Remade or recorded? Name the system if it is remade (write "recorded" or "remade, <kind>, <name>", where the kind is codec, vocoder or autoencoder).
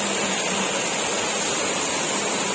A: recorded